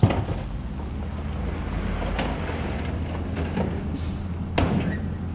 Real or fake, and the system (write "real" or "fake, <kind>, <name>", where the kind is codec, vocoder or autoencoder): real